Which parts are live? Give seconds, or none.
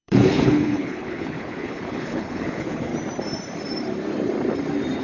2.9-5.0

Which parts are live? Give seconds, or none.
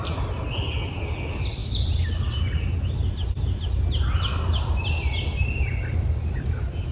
0.0-6.9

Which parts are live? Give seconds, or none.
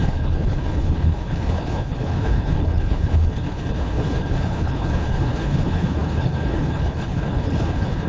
none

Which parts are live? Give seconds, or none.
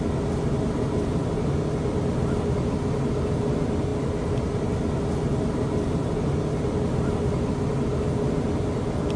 0.0-9.2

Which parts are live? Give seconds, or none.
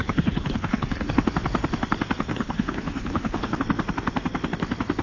1.1-2.3; 3.6-5.0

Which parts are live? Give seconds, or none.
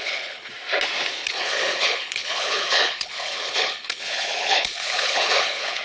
0.5-1.1